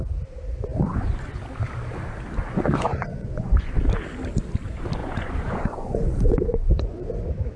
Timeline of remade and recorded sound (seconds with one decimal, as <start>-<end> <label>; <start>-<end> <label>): 0.0-0.7 recorded; 0.7-1.3 remade; 1.3-2.4 recorded; 2.4-3.8 remade; 3.8-5.0 recorded; 5.0-7.1 remade; 7.1-7.6 recorded